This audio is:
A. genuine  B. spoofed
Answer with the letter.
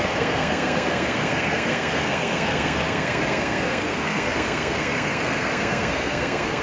B